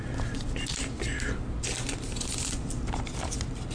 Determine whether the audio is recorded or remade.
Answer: recorded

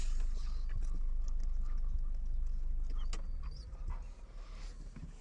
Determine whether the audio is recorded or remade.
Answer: recorded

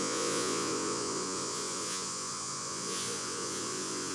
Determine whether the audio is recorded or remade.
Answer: remade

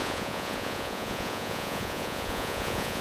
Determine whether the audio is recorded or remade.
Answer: remade